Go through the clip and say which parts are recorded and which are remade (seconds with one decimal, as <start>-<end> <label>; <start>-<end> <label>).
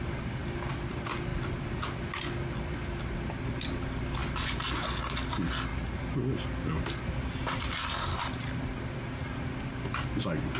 0.0-10.6 recorded